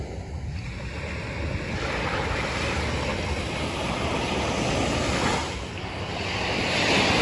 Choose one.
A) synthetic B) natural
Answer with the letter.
B